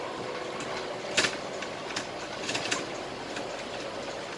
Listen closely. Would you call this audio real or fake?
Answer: real